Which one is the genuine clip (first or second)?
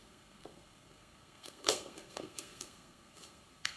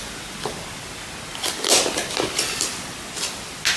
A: second